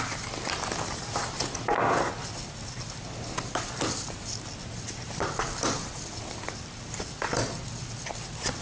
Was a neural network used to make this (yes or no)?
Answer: no